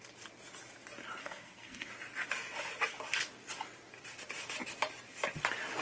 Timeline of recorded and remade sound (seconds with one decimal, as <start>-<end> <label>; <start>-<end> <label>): 0.0-1.2 recorded; 1.2-1.9 remade; 1.9-5.8 recorded